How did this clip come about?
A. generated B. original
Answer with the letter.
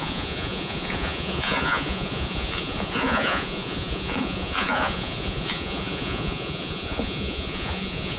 A